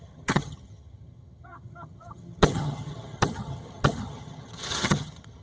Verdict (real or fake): fake